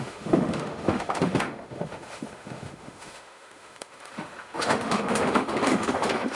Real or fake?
fake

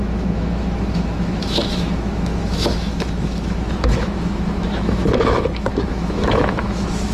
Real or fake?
fake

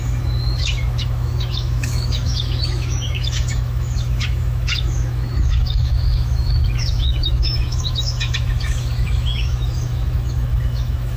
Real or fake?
fake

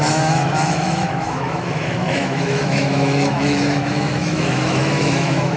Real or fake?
fake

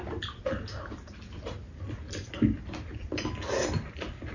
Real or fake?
real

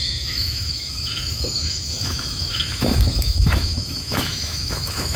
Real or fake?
fake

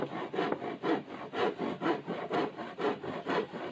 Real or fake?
real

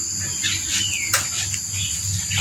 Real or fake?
real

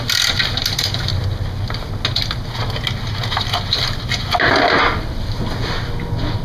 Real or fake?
real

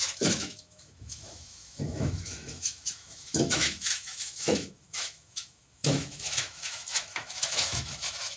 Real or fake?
fake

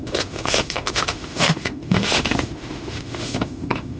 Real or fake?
fake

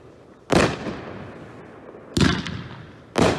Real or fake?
real